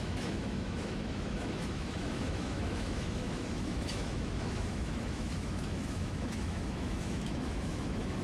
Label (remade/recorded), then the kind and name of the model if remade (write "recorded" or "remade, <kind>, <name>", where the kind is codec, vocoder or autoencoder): remade, autoencoder, DAC-VAE